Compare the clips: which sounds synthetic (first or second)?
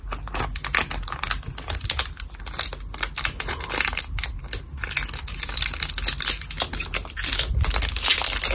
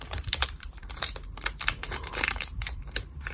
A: second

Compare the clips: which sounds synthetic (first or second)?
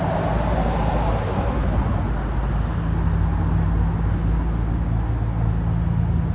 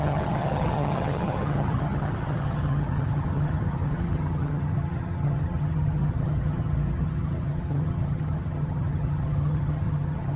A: second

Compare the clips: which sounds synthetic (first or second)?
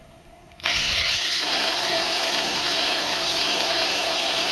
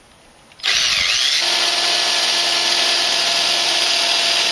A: first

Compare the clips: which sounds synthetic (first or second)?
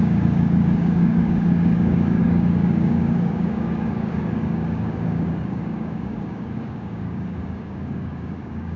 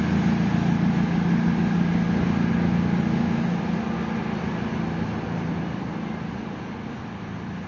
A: first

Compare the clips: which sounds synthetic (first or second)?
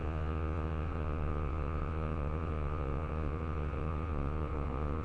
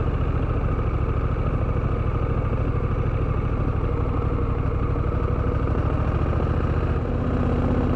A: first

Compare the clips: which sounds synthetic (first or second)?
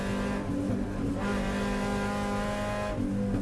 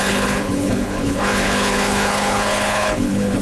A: second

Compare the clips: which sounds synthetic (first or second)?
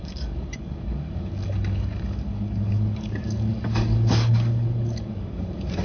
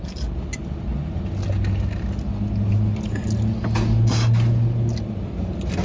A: first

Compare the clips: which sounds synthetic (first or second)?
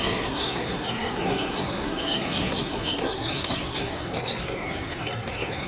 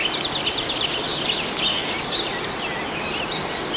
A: first